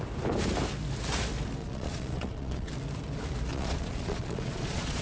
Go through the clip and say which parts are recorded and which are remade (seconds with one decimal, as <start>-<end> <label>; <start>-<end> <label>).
0.0-1.6 recorded; 1.6-2.7 remade; 2.7-3.5 recorded; 3.5-5.0 remade